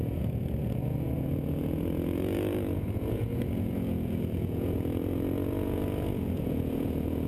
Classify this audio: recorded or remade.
remade